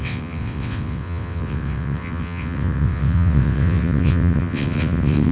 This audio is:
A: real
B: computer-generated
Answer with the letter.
B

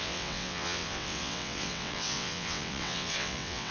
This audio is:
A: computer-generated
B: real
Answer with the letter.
A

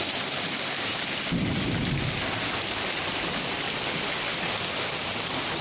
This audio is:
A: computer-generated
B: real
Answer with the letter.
B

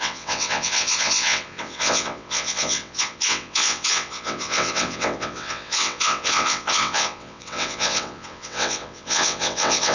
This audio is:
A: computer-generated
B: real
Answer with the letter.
A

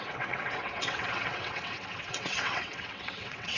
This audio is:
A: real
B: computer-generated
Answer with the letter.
B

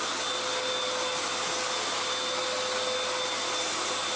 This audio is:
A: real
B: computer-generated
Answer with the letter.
A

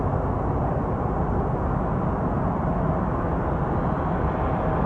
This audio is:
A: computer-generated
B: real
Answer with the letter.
B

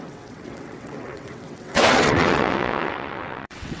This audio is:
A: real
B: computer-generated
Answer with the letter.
B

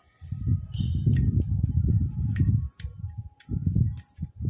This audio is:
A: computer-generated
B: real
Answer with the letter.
B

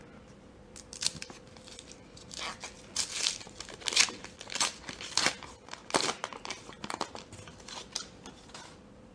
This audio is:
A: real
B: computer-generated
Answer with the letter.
A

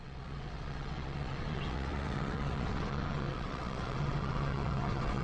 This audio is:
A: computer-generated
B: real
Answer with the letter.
A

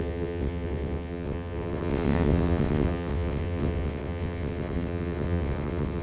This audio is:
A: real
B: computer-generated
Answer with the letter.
B